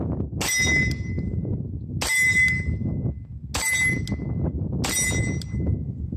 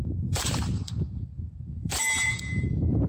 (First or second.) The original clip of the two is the first